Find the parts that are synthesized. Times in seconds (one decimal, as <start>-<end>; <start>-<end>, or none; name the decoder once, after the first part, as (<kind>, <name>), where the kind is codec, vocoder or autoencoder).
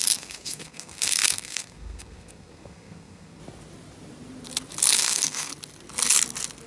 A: 0.0-3.4 (codec, SNAC); 4.9-5.5